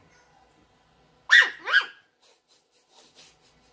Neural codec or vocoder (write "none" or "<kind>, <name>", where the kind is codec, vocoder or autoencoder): none